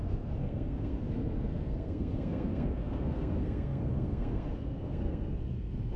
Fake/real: fake